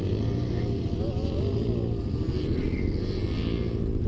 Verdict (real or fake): real